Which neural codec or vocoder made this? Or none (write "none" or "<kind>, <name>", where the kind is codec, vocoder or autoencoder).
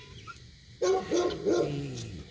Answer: none